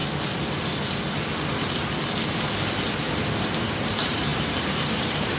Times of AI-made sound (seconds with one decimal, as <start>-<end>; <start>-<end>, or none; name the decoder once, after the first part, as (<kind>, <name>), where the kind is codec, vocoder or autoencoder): 3.2-5.4 (vocoder, BigVGAN v2)